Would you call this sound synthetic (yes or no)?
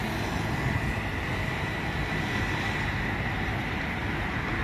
no